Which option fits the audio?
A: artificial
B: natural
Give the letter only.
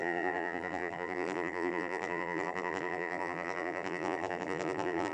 A